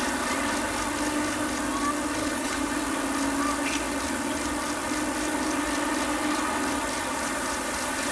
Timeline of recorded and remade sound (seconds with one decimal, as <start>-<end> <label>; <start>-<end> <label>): 0.0-2.2 recorded; 2.2-2.7 remade; 2.7-8.1 recorded